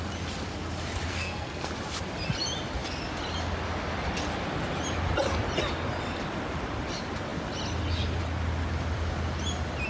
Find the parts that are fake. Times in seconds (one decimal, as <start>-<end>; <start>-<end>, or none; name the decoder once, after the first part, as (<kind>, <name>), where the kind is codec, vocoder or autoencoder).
1.1-1.7 (codec, SNAC)